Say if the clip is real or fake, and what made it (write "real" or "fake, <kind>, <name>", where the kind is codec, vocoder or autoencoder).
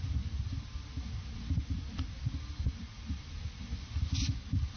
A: real